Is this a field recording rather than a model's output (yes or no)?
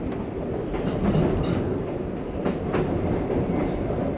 yes